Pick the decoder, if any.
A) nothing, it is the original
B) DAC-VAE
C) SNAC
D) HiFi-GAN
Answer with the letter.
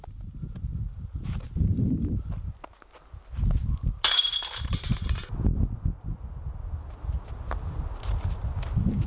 A